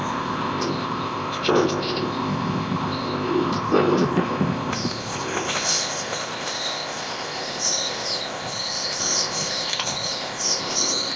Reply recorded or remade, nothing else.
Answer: remade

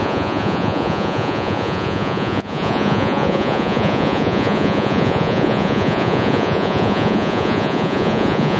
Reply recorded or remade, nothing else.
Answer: remade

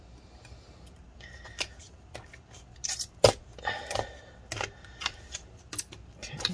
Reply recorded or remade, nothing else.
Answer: recorded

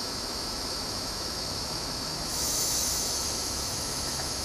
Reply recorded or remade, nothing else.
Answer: remade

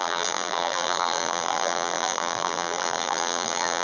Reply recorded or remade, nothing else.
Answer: remade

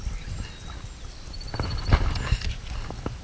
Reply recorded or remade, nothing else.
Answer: recorded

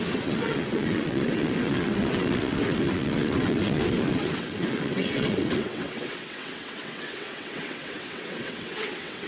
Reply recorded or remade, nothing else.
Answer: remade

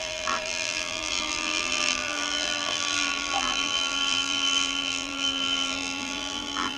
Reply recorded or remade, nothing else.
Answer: remade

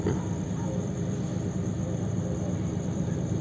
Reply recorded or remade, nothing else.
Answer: remade